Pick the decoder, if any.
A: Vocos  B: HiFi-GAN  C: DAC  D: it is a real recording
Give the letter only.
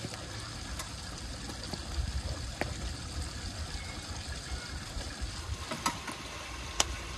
D